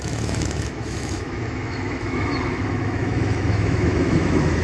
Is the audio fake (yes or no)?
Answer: yes